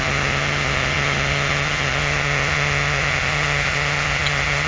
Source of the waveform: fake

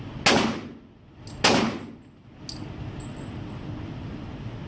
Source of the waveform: real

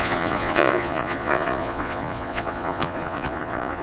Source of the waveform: fake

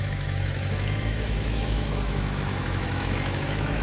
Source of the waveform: fake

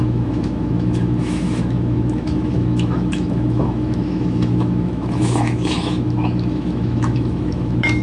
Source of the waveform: fake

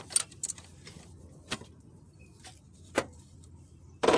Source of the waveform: fake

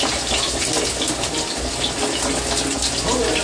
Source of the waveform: real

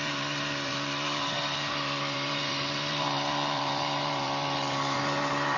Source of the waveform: fake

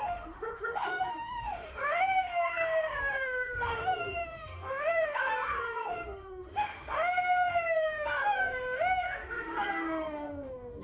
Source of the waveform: fake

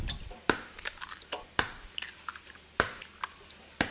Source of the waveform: real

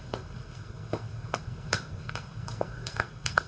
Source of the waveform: fake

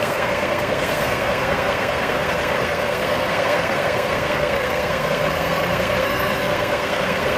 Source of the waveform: fake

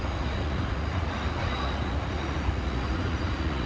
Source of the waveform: fake